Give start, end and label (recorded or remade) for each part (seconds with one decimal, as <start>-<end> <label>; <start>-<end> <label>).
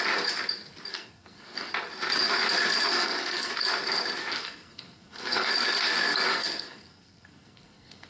0.0-0.9 recorded; 0.9-1.7 remade; 1.7-2.9 recorded; 2.9-3.5 remade; 3.5-4.2 recorded; 4.2-5.5 remade; 5.5-6.3 recorded; 6.3-8.1 remade